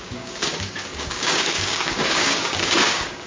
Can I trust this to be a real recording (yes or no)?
no